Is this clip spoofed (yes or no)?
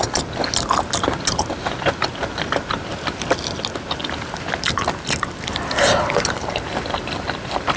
no